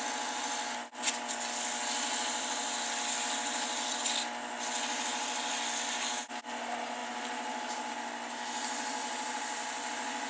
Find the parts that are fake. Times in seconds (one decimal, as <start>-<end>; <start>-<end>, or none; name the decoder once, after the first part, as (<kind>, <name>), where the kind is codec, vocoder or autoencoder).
7.0-7.9 (vocoder, BigVGAN v2); 9.0-9.9